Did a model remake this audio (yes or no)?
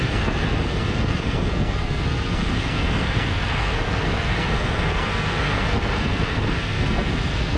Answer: yes